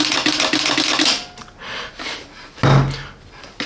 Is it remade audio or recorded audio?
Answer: recorded